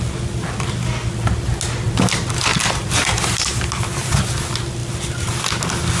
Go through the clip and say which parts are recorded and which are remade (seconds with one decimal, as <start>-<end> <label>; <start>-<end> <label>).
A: 0.0-6.0 recorded